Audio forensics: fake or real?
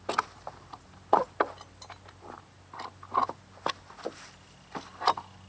real